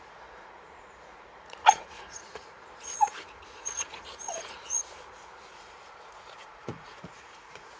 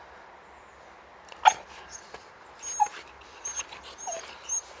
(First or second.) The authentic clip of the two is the second